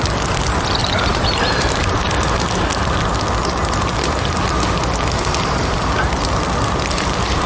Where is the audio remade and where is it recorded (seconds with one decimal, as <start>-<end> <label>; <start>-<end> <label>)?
0.0-0.8 recorded; 0.8-2.1 remade; 2.1-7.5 recorded